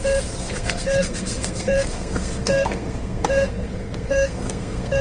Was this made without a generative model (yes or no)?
no